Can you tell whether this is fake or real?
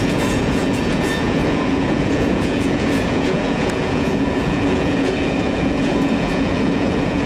fake